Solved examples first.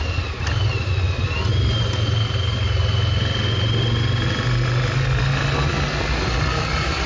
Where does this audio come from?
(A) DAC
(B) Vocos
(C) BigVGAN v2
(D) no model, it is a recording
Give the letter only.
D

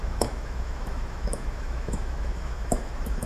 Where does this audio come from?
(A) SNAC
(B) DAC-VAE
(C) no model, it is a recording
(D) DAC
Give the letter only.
B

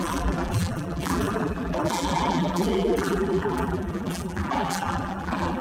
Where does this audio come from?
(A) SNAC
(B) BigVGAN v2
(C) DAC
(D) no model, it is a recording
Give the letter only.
B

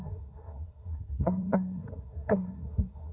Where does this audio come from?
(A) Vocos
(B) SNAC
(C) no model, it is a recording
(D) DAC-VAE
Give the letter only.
B